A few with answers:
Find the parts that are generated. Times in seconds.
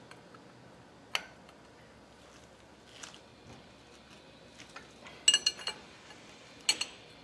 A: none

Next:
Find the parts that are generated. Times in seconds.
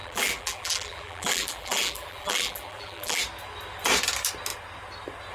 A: 0.0-3.2 (vocoder, BigVGAN v2)